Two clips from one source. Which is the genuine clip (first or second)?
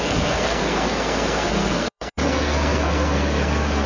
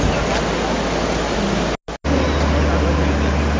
second